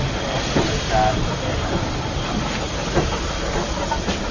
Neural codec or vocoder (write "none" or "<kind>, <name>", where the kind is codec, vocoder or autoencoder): none